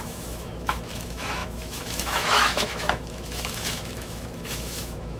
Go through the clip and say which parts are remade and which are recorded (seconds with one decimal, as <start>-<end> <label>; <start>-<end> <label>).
0.0-5.2 remade